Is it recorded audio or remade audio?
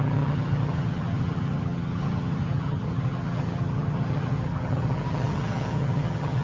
remade